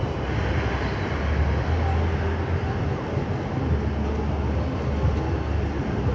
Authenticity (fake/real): real